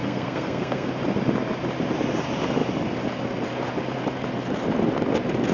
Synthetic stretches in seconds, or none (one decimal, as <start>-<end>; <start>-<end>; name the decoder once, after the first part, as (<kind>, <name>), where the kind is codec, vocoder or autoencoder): 0.0-0.9 (codec, SNAC)